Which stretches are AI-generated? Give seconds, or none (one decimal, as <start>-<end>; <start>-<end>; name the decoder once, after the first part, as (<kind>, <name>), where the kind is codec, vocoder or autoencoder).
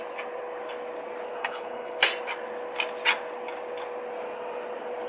1.4-2.0 (codec, HILCodec)